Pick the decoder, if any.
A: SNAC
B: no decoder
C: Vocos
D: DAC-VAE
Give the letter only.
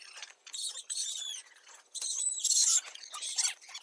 C